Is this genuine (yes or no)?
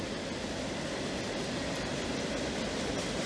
yes